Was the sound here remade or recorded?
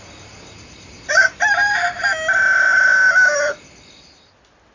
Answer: recorded